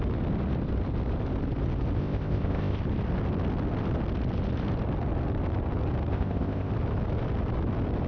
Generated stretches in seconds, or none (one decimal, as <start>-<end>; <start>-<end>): 2.0-2.8; 6.1-6.7